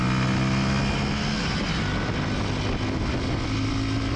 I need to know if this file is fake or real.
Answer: real